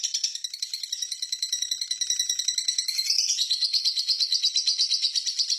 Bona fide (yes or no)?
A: yes